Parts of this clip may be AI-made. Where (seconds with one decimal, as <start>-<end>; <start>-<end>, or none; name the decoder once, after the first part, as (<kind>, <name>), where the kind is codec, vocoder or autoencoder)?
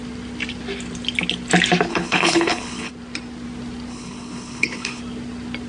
1.9-2.9 (codec, HILCodec); 3.9-5.0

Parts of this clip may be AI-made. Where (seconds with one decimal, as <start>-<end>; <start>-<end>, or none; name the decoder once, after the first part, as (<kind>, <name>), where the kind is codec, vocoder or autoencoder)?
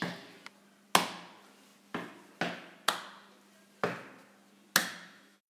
4.8-5.5 (autoencoder, DAC-VAE)